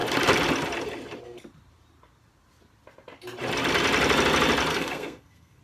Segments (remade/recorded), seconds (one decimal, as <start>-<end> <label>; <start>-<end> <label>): 0.0-4.7 recorded; 4.7-5.6 remade